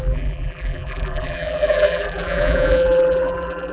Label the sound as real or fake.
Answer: fake